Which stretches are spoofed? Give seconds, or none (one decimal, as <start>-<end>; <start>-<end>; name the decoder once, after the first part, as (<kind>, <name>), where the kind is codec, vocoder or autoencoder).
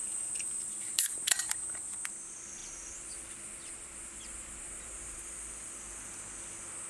0.0-1.5 (vocoder, BigVGAN v2)